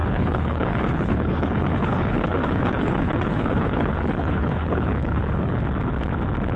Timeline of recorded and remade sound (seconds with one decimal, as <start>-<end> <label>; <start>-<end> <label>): 0.0-5.6 remade; 5.6-6.6 recorded